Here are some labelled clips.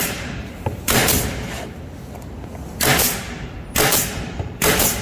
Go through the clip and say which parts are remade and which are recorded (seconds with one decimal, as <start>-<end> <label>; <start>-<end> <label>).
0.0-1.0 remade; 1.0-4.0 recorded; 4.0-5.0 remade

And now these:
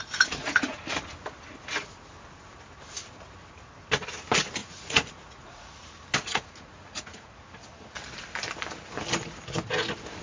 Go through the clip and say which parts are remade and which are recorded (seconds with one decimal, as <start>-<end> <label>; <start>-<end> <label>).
0.0-0.8 remade; 0.8-4.6 recorded; 4.6-5.7 remade; 5.7-6.3 recorded; 6.3-7.4 remade; 7.4-10.2 recorded

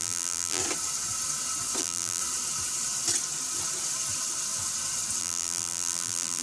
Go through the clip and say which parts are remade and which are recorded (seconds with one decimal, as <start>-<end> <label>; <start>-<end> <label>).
0.0-0.6 remade; 0.6-1.8 recorded; 1.8-2.2 remade; 2.2-5.2 recorded; 5.2-6.4 remade

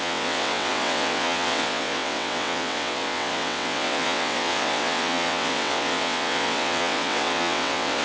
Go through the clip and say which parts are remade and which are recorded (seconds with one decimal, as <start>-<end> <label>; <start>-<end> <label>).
0.0-8.0 remade

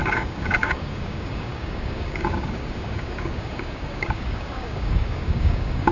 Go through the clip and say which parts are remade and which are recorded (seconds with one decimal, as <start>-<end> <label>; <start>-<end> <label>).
0.0-5.9 remade